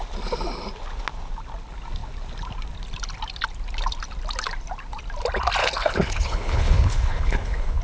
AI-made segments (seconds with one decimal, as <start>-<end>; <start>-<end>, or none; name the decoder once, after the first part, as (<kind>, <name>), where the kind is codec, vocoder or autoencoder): 5.6-7.8 (codec, HILCodec)